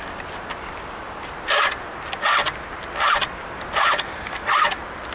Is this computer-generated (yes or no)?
no